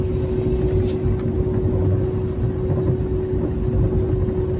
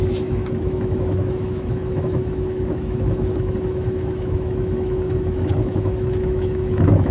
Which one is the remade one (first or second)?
second